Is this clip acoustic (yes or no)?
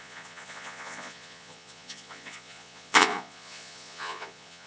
no